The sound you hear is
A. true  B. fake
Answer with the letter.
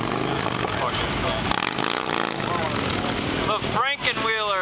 A